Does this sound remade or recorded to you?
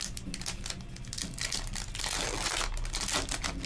recorded